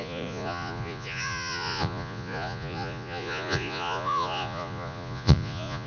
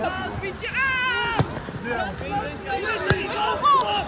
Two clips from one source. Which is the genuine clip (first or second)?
second